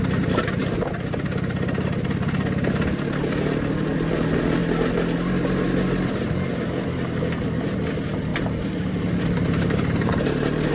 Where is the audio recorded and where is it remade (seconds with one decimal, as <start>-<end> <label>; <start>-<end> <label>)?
0.0-8.3 recorded; 8.3-10.7 remade